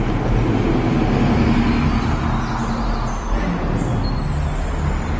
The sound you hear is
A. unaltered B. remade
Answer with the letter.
A